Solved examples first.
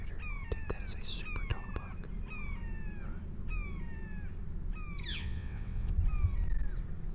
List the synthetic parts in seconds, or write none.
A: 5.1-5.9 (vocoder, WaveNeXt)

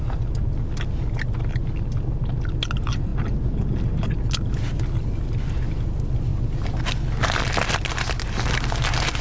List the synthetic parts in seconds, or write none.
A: none

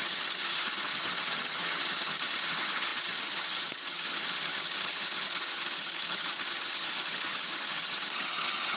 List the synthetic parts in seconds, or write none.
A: 0.0-8.8 (vocoder, HiFi-GAN)

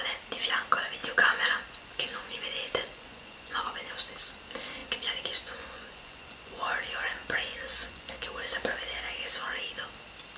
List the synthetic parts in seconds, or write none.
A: 1.0-3.9 (vocoder, Vocos); 4.8-8.1

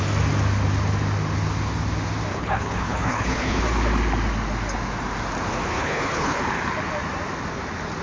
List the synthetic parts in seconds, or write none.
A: 2.3-3.6 (codec, HILCodec); 5.7-6.4

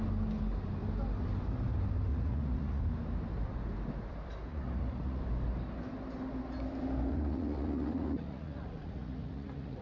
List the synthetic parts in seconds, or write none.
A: 2.1-2.8 (vocoder, Vocos); 4.5-5.2; 7.1-9.8